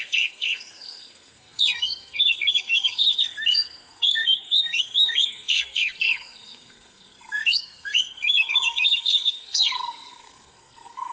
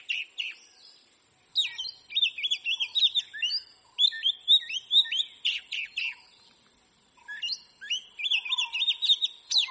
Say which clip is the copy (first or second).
first